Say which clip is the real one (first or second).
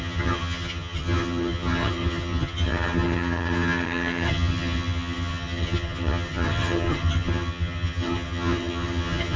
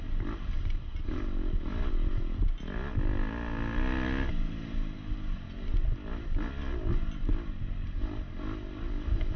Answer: second